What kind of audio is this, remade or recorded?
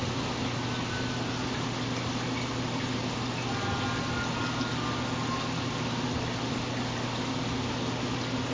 recorded